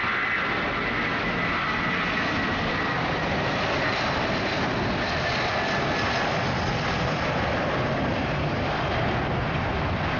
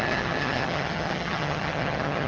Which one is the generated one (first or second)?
second